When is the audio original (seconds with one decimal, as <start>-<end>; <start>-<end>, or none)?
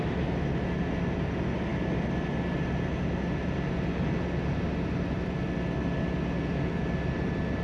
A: 0.0-7.6